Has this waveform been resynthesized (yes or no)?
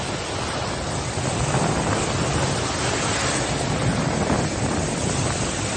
no